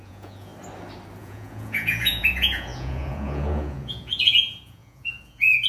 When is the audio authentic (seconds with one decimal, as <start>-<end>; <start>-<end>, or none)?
0.5-1.2